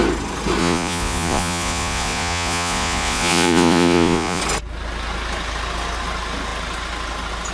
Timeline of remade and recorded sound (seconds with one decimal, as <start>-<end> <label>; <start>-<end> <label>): 0.0-0.6 recorded; 0.6-4.4 remade; 4.4-7.5 recorded